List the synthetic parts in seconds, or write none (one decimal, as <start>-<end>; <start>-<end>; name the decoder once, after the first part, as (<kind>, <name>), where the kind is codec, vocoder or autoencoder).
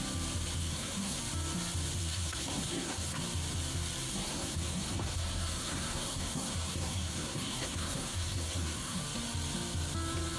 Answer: 0.6-1.2 (codec, SNAC); 2.0-3.2; 4.1-9.0